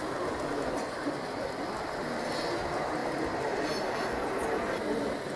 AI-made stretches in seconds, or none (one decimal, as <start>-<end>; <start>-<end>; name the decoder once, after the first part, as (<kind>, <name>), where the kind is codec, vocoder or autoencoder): none